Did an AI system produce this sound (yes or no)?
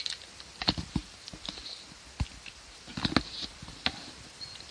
no